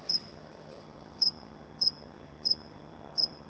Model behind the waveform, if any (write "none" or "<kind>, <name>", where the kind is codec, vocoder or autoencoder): vocoder, HiFi-GAN